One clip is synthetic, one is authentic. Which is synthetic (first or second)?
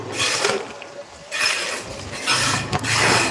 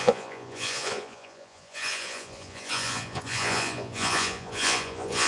second